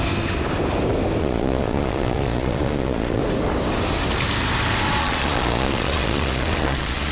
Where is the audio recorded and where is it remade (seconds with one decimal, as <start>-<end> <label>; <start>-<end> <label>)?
0.0-1.2 recorded; 1.2-3.2 remade; 3.2-5.0 recorded; 5.0-7.1 remade